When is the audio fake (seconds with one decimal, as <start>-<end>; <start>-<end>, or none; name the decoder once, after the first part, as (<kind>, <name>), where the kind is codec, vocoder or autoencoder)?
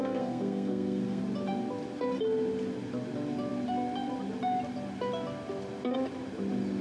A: 0.0-1.2 (codec, SNAC)